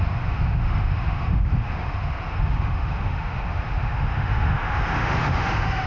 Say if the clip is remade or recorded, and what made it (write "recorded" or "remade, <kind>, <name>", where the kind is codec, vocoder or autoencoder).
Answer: remade, autoencoder, DAC-VAE